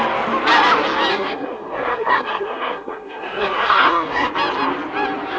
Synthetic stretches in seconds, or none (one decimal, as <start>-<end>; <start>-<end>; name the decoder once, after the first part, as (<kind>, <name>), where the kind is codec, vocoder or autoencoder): 1.1-4.3 (codec, SNAC)

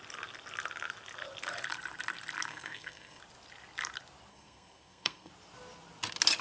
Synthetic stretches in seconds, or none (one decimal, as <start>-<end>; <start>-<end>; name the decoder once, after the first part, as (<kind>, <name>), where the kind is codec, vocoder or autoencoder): 2.5-3.2 (codec, SNAC); 4.3-5.3

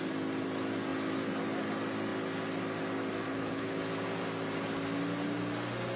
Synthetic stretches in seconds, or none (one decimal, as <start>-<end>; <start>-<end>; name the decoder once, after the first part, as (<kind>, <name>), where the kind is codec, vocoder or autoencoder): 3.3-3.8 (codec, HILCodec)

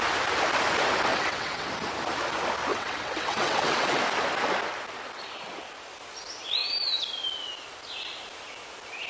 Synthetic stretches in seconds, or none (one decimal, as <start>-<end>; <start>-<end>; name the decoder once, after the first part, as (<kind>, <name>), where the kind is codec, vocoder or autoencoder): 1.1-1.7 (vocoder, WaveNeXt); 2.7-4.0

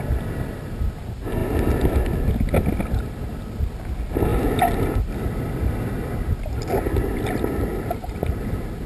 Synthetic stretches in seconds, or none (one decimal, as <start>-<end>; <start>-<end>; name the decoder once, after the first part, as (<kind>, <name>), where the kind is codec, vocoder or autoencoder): none

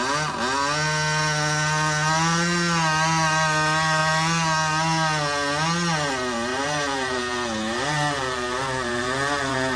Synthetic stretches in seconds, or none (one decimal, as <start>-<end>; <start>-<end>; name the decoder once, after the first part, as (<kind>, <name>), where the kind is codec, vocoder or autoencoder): 6.5-9.8 (vocoder, BigVGAN v2)

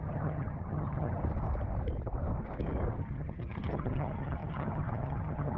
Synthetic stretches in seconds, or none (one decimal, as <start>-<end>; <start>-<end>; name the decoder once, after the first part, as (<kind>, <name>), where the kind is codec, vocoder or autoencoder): 0.0-1.2 (vocoder, HiFi-GAN); 3.0-5.6

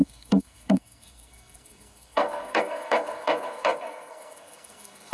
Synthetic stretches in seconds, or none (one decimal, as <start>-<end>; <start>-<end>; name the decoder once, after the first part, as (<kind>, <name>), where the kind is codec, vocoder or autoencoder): 0.0-5.1 (codec, SNAC)